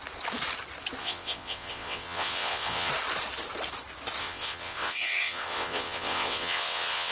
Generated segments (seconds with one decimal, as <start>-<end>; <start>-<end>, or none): 1.0-2.9; 4.2-7.1